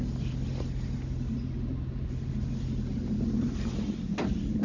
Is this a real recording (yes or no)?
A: yes